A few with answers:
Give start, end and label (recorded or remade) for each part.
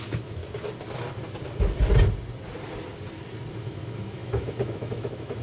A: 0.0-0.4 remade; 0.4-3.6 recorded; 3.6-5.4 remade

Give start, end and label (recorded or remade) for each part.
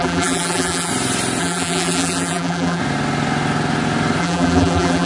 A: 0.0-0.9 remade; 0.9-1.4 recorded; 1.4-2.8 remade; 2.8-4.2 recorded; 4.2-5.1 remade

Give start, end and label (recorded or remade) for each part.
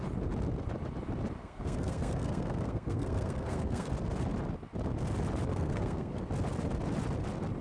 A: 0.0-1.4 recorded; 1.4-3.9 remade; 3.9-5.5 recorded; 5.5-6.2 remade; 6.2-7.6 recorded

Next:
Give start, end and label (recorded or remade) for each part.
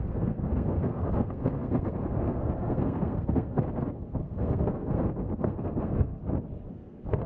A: 0.0-6.2 remade; 6.2-6.7 recorded; 6.7-7.3 remade